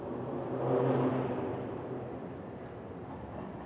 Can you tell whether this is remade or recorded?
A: recorded